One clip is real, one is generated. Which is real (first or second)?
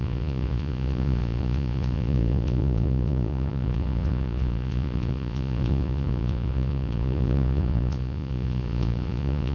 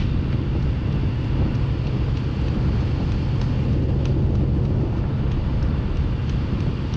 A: second